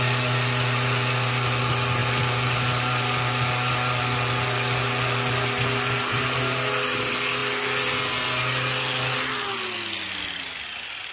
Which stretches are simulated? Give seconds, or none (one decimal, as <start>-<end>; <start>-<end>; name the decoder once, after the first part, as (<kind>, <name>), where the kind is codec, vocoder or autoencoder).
none

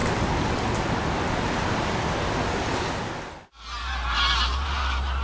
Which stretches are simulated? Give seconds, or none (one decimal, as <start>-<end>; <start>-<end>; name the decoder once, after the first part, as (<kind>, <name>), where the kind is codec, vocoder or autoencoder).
none

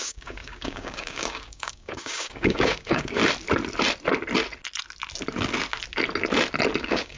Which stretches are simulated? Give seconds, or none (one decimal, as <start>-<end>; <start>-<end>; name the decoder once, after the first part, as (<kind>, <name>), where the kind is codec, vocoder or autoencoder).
0.0-3.2 (codec, DAC); 6.8-7.2